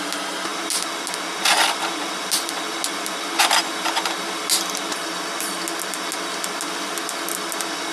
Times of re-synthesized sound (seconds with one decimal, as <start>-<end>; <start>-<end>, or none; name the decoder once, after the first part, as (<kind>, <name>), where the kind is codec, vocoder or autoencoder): none